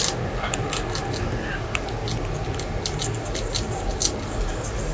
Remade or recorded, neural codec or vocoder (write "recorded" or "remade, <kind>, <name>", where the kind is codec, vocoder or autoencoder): recorded